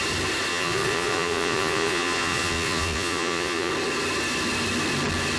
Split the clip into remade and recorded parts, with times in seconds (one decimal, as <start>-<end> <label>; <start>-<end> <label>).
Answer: 0.0-0.5 recorded; 0.5-3.7 remade; 3.7-5.4 recorded